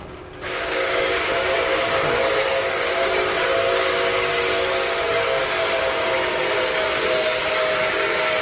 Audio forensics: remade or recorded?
remade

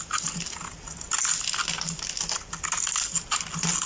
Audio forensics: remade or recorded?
recorded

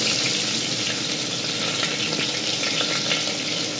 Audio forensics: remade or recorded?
recorded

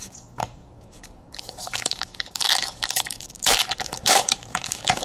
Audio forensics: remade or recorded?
remade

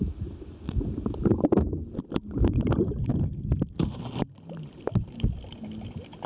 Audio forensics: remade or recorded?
recorded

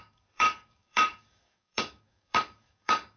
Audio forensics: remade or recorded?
remade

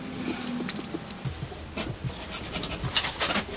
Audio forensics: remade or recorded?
recorded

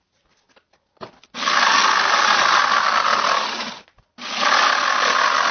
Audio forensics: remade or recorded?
recorded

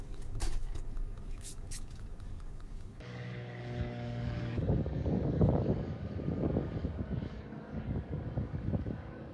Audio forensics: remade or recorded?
remade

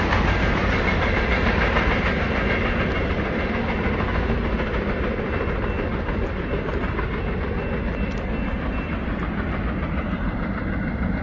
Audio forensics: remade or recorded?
recorded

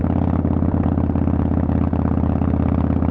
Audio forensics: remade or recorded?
recorded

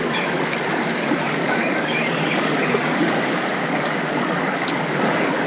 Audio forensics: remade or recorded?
remade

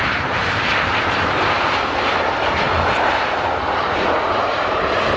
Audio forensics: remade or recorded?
recorded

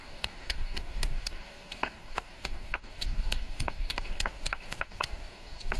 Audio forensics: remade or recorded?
remade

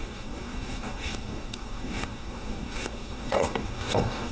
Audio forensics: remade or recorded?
remade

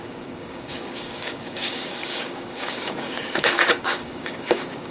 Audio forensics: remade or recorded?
remade